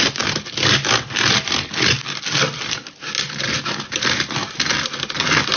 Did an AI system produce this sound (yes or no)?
no